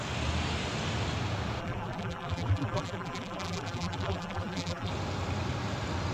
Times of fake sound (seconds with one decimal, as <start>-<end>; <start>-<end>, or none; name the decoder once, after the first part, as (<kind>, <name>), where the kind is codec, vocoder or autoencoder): 1.6-4.9 (vocoder, BigVGAN v2)